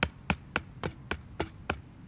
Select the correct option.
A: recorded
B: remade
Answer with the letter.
A